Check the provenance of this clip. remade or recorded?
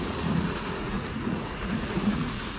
remade